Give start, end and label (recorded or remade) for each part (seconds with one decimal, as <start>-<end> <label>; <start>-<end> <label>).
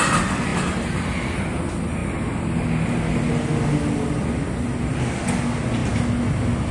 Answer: 0.0-6.7 recorded